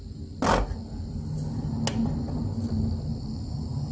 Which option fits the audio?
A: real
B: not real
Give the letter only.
A